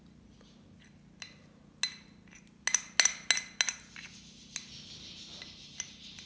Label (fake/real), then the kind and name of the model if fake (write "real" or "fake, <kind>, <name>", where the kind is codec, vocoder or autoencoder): real